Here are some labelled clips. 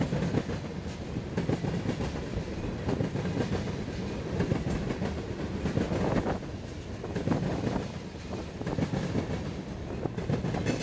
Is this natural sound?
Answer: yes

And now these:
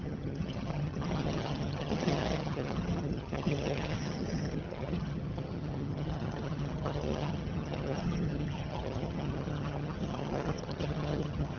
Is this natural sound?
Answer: no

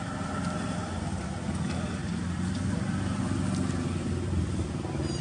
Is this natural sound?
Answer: yes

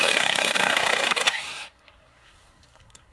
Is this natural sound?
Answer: no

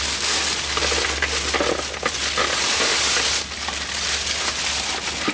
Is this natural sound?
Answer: yes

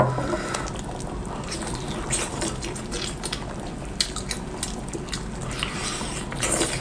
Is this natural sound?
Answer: yes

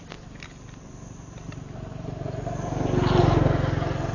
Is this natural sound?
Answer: yes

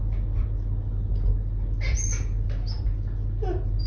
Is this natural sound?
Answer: yes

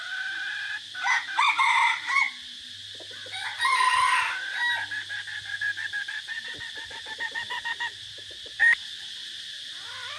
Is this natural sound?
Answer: yes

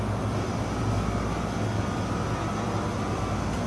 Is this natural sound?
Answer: yes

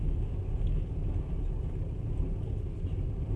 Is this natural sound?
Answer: yes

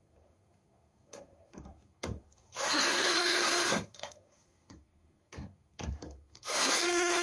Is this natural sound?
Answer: no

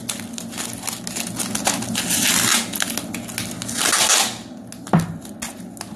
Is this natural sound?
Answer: yes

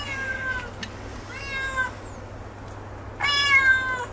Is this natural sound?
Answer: yes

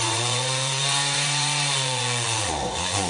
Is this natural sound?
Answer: no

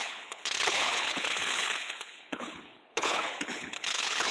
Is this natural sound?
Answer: no